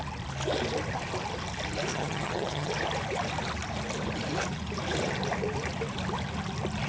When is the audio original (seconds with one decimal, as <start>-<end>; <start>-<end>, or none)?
0.0-1.9; 2.7-6.9